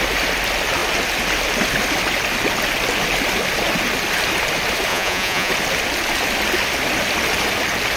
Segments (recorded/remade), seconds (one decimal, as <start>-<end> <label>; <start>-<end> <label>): 0.0-4.9 recorded; 4.9-5.5 remade; 5.5-8.0 recorded